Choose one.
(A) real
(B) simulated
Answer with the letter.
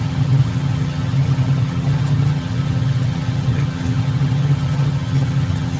B